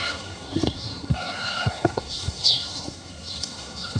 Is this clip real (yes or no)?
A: no